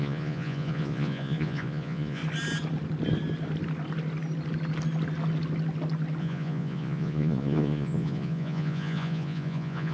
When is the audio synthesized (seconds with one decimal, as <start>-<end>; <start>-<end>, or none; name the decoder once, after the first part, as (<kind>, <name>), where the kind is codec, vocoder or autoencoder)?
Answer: 0.0-2.2 (vocoder, Vocos); 6.2-9.9